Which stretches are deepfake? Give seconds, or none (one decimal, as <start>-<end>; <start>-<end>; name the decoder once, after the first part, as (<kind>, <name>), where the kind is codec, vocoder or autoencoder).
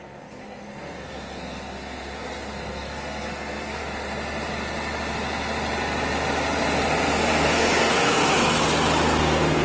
0.0-3.8 (codec, SNAC); 7.1-8.2; 9.2-9.6